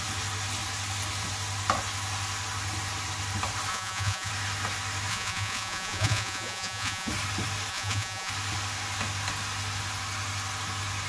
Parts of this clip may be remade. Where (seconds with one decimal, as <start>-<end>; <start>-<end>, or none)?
3.7-4.3; 5.1-7.1; 7.7-8.3